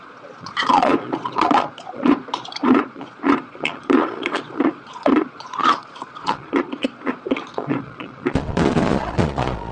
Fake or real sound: fake